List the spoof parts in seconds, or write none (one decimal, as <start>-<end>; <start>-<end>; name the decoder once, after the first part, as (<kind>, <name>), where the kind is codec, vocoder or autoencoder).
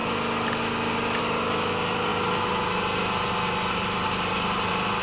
none